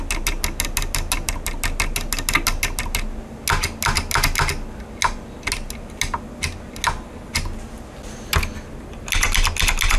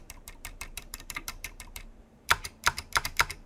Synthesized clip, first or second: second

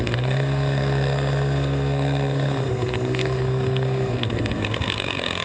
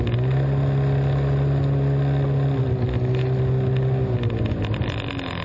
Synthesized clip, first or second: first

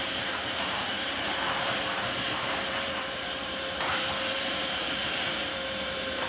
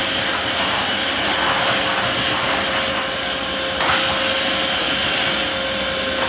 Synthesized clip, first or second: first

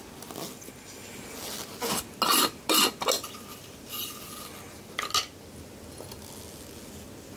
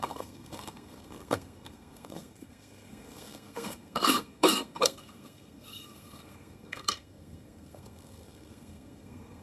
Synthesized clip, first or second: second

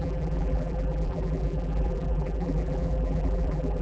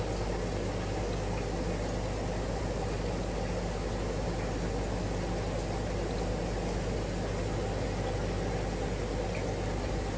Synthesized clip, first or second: first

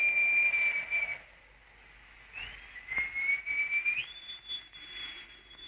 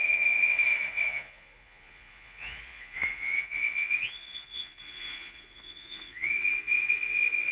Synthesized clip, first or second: second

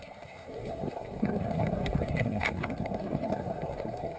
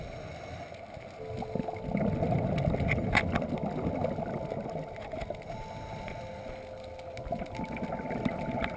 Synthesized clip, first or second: first